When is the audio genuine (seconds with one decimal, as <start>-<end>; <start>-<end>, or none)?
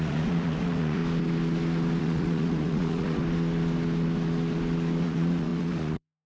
1.0-2.0; 3.2-5.0